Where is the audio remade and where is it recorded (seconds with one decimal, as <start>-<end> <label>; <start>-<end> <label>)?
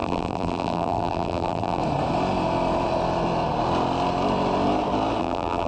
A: 0.0-1.8 remade; 1.8-5.2 recorded; 5.2-5.7 remade